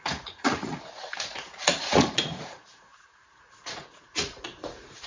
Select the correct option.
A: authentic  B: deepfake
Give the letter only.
B